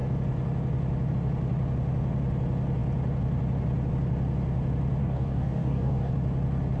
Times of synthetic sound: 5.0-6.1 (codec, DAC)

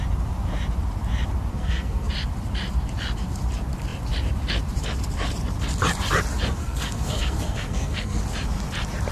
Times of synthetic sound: 1.5-2.1 (codec, SNAC); 6.6-8.2

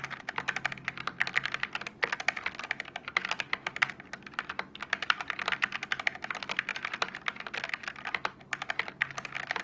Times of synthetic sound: none

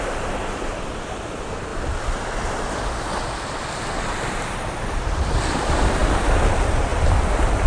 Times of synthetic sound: 0.0-1.7 (vocoder, BigVGAN v2); 2.5-6.0; 6.5-6.9

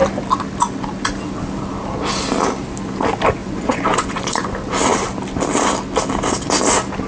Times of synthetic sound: 3.4-4.5 (vocoder, Vocos)

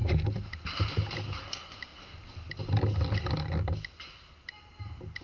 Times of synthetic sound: none

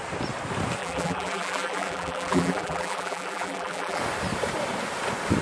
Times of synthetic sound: 0.8-4.0 (vocoder, BigVGAN v2)